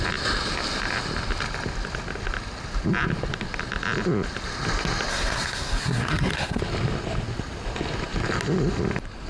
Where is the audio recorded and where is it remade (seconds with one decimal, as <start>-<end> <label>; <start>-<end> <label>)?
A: 0.0-5.1 recorded; 5.1-6.6 remade; 6.6-9.3 recorded